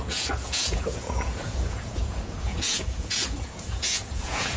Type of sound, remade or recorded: remade